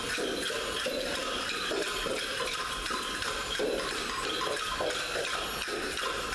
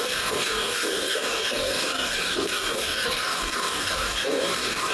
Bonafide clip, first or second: first